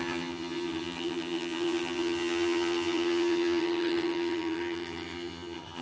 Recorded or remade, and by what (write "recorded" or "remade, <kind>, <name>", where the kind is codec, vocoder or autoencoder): remade, vocoder, HiFi-GAN